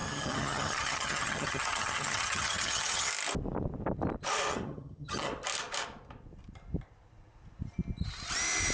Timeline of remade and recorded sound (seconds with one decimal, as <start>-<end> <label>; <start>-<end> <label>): 0.0-3.1 remade; 3.1-4.5 recorded; 4.5-5.3 remade; 5.3-8.7 recorded